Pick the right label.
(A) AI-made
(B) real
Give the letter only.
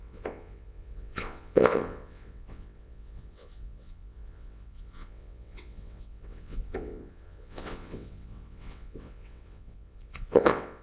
A